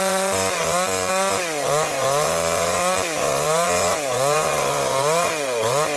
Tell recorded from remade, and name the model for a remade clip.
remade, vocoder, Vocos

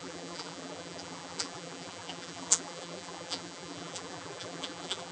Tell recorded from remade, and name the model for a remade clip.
remade, vocoder, BigVGAN v2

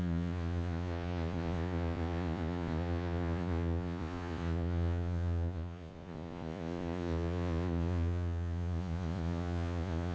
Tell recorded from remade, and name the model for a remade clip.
remade, vocoder, Vocos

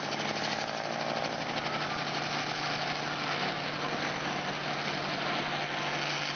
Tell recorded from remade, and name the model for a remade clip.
recorded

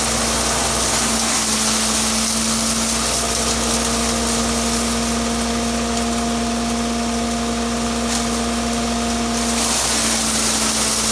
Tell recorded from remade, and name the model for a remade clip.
recorded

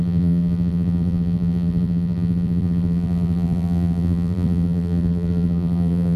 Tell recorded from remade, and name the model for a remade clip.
remade, vocoder, BigVGAN v2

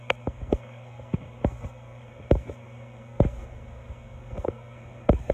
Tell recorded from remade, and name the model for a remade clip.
remade, codec, SNAC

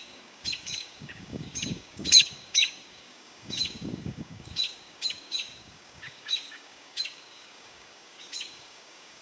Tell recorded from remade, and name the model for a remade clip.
remade, codec, DAC